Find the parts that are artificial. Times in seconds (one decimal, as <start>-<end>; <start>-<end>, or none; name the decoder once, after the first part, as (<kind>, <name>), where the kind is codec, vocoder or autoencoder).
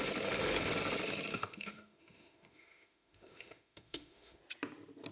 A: 1.3-4.4 (autoencoder, DAC-VAE)